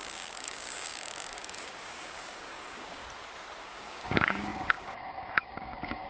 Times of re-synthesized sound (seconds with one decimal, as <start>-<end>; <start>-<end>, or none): 0.0-3.0; 3.6-6.1